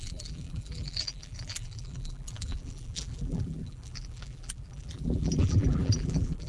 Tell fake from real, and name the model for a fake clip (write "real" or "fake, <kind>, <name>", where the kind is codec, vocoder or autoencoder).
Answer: fake, vocoder, BigVGAN v2